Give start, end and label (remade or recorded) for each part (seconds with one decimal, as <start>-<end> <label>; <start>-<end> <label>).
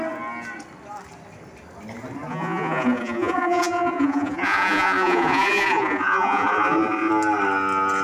0.0-2.3 recorded; 2.3-7.1 remade; 7.1-8.0 recorded